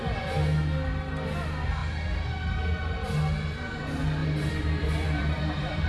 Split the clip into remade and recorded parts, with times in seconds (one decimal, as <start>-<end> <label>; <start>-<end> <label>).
0.0-4.2 recorded; 4.2-5.9 remade